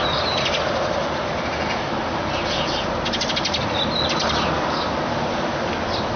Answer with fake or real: real